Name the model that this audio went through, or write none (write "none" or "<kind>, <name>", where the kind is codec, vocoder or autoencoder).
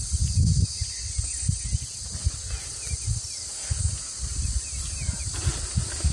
none